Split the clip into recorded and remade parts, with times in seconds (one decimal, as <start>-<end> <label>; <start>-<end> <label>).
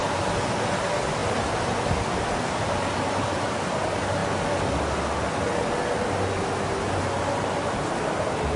0.0-1.2 recorded; 1.2-1.9 remade; 1.9-8.6 recorded